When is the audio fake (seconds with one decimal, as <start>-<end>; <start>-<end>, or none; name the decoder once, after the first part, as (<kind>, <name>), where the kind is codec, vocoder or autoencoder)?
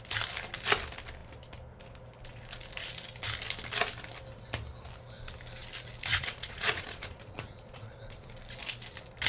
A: 6.1-8.3 (vocoder, Vocos)